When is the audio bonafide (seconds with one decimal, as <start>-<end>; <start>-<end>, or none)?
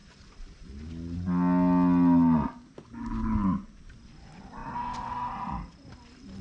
0.0-6.4